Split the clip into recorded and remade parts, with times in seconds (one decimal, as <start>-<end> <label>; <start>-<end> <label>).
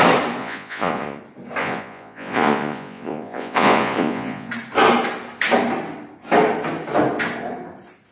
0.0-0.4 recorded; 0.4-1.2 remade; 1.2-1.6 recorded; 1.6-4.5 remade; 4.5-8.1 recorded